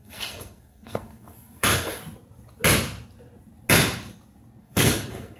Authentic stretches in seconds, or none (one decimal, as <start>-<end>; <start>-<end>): 2.0-4.6